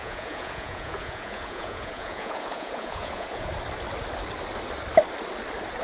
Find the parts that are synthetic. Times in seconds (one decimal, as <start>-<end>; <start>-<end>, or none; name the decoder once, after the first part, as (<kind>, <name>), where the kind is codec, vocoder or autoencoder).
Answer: 0.0-3.5 (vocoder, Vocos)